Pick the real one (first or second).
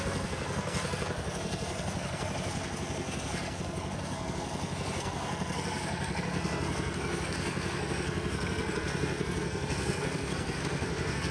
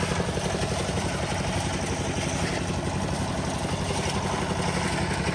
second